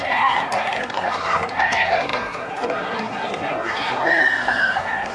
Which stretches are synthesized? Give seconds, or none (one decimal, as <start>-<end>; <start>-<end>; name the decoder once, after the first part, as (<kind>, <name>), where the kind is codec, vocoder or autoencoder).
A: 0.0-5.1 (codec, SNAC)